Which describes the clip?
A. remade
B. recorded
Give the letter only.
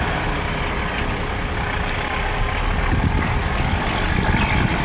B